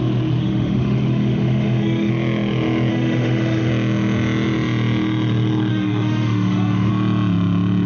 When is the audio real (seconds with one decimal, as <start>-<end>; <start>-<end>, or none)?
0.0-0.4; 2.1-2.9; 3.7-5.7; 6.9-7.9